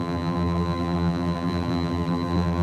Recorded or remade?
remade